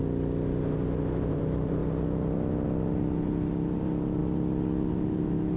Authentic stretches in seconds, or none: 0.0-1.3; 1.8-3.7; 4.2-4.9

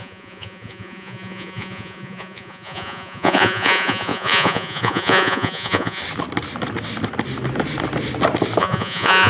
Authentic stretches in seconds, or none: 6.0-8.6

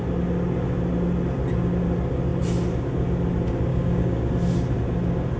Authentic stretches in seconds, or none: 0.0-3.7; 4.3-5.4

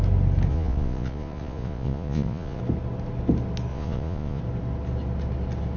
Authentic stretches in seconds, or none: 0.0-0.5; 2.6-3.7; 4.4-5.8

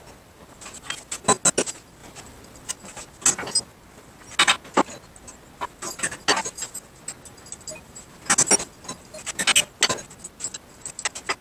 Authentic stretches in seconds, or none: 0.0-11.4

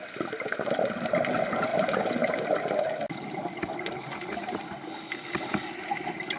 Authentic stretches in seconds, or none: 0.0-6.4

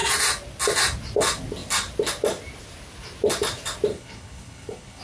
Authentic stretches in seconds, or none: 0.0-3.9

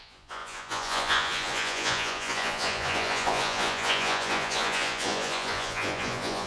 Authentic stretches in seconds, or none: none